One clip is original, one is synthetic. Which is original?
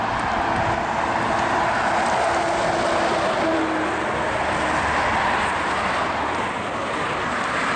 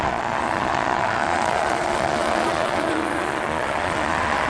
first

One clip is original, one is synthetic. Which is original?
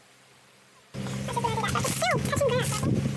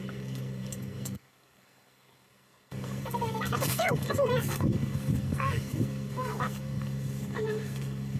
first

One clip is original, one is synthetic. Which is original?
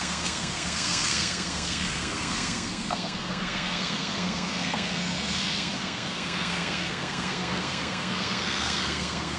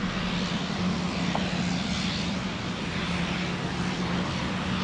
second